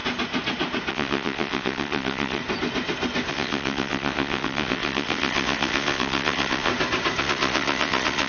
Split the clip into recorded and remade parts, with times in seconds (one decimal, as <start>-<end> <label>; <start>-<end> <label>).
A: 0.0-0.9 recorded; 0.9-2.4 remade; 2.4-3.3 recorded; 3.3-6.7 remade; 6.7-7.2 recorded; 7.2-8.3 remade